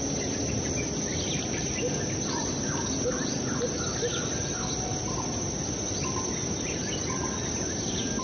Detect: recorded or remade recorded